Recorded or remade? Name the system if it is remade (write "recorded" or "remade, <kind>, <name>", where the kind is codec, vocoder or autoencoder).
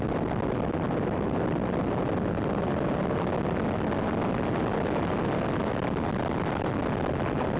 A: recorded